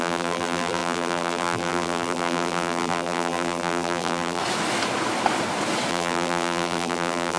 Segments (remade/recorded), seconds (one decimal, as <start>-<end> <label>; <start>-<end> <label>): 0.0-4.4 remade; 4.4-5.9 recorded; 5.9-7.4 remade